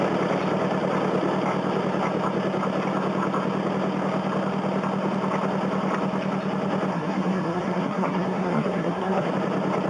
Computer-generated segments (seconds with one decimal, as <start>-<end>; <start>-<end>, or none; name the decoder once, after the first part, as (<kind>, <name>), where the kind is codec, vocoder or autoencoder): 6.9-9.3 (codec, SNAC)